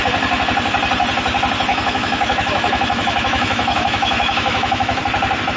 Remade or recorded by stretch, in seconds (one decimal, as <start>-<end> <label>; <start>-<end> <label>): 0.0-1.7 recorded; 1.7-5.0 remade; 5.0-5.6 recorded